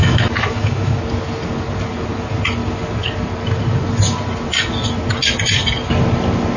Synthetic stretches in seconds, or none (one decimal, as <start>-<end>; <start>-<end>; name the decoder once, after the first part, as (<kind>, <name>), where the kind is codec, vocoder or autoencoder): 0.0-1.0 (autoencoder, DAC-VAE)